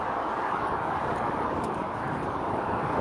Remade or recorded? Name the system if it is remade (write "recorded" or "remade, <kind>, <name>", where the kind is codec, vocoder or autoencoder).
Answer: remade, codec, DAC